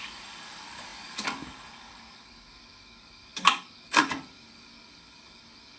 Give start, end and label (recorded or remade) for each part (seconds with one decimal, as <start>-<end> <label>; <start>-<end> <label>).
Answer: 0.0-5.8 remade